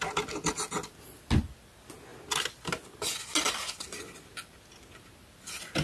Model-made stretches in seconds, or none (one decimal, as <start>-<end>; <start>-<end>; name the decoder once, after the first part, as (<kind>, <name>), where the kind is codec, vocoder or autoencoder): none